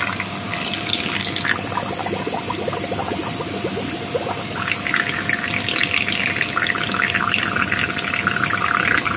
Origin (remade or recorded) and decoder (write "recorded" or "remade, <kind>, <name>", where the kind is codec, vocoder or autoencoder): recorded